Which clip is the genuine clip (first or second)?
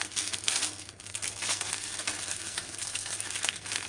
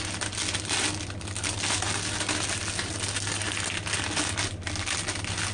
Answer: second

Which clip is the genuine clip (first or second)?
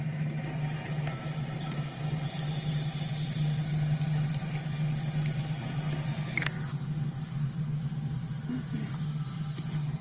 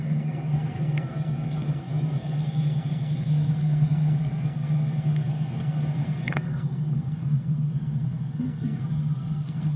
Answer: first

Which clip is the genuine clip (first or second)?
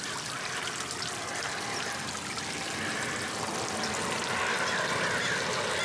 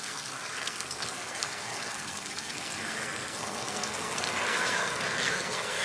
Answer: first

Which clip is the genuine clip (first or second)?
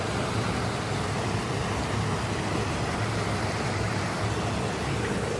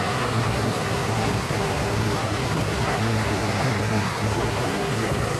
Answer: first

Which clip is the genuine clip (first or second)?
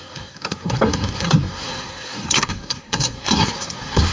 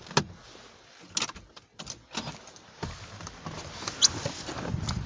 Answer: second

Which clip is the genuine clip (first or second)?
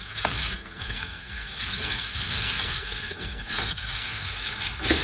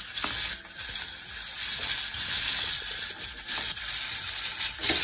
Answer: second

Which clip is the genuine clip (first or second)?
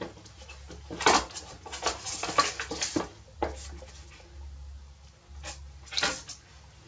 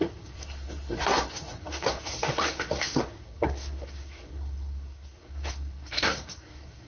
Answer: first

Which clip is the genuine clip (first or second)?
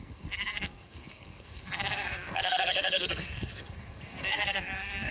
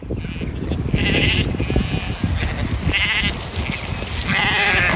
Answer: second